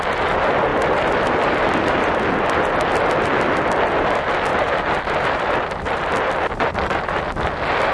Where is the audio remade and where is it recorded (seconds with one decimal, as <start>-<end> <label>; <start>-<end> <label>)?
0.0-7.9 recorded